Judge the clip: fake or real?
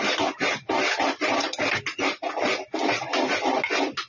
real